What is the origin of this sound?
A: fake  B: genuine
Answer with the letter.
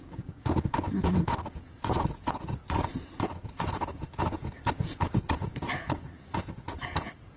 A